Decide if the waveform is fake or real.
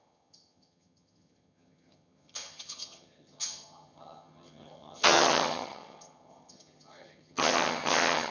fake